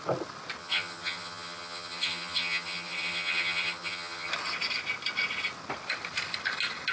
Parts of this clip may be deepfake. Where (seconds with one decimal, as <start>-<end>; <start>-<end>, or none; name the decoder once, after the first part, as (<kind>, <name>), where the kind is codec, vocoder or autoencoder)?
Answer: 0.6-4.3 (vocoder, HiFi-GAN)